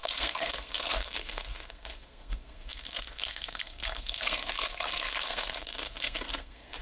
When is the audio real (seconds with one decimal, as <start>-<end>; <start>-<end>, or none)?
none